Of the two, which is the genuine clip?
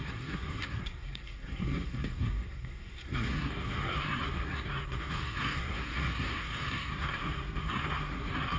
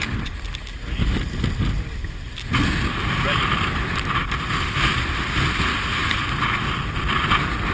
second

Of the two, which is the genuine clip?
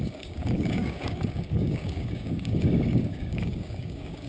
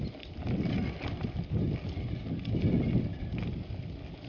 second